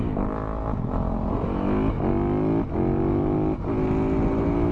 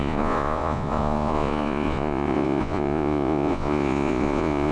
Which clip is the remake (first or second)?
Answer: second